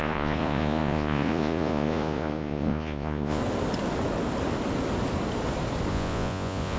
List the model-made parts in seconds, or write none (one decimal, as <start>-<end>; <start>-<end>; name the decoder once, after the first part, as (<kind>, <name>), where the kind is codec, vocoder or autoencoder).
0.0-3.4 (vocoder, Vocos); 5.9-6.8